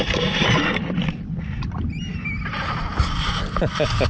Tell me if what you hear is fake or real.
real